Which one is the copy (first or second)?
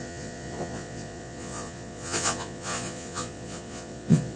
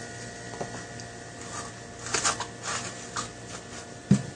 first